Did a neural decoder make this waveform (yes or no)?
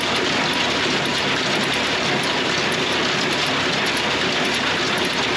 no